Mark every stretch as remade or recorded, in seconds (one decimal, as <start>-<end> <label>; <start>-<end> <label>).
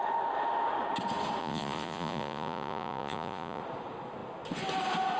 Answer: 0.0-1.4 recorded; 1.4-3.6 remade; 3.6-5.2 recorded